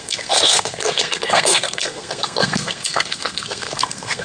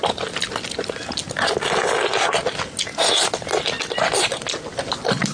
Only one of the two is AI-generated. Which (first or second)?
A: first